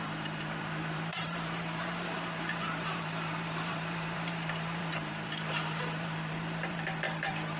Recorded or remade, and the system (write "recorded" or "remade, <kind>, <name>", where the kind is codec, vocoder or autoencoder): remade, vocoder, BigVGAN v2